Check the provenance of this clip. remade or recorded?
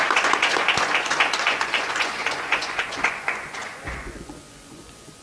remade